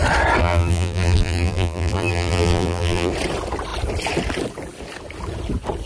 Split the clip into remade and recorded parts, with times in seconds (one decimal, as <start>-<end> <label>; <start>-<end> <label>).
0.0-0.4 recorded; 0.4-3.1 remade; 3.1-5.9 recorded